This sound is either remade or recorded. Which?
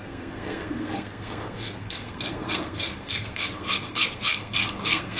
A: remade